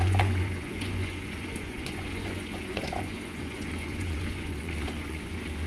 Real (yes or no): no